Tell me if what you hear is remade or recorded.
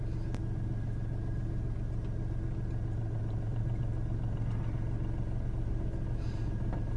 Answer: recorded